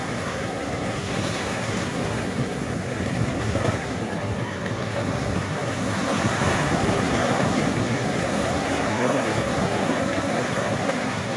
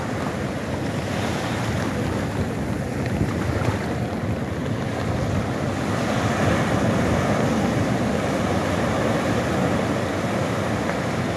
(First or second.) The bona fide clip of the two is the second